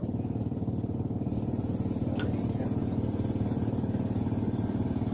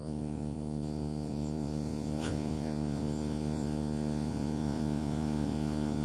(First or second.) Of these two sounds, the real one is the first